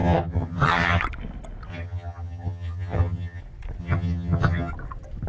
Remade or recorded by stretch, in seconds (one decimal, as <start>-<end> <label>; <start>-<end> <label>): 0.0-1.0 remade; 1.0-1.7 recorded; 1.7-3.4 remade; 3.4-3.8 recorded; 3.8-4.7 remade; 4.7-5.3 recorded